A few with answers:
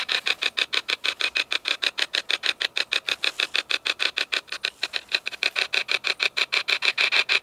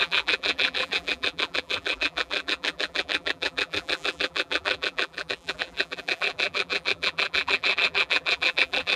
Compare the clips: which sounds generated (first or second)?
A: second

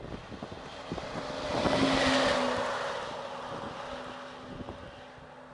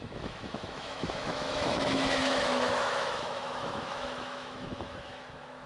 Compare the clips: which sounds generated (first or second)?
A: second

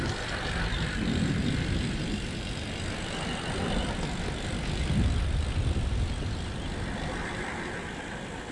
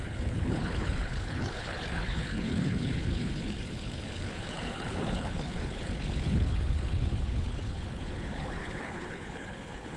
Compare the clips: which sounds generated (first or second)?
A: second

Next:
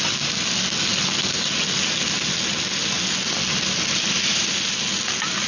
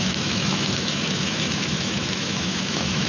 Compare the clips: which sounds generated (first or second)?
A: second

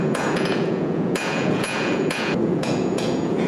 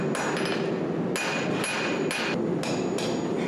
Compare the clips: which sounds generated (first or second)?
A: first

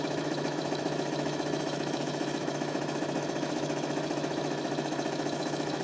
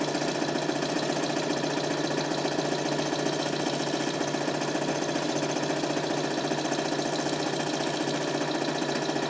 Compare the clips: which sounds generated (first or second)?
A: first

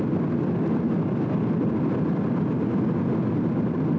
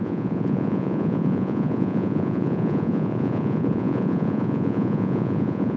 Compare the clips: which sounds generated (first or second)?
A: second